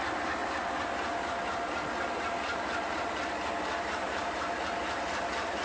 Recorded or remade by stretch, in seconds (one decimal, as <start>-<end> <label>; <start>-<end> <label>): 0.0-0.4 remade; 0.4-3.8 recorded; 3.8-5.6 remade